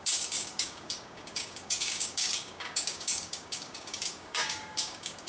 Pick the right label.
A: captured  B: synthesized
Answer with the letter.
B